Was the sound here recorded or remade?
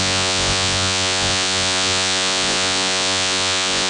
remade